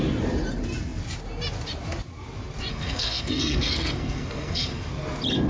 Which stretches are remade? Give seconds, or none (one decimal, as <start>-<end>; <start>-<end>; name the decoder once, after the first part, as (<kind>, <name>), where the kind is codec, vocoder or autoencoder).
2.7-4.9 (codec, SNAC)